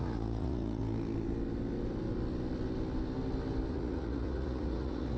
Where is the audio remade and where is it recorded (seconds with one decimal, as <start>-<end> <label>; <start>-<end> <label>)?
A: 0.0-0.8 remade; 0.8-3.7 recorded; 3.7-5.2 remade